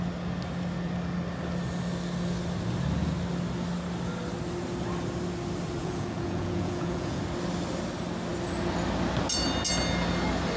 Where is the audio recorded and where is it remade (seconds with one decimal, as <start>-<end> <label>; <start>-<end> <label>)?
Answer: 0.0-5.8 recorded; 5.8-7.2 remade; 7.2-10.6 recorded